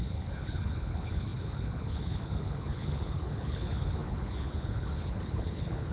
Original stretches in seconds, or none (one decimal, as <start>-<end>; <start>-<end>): none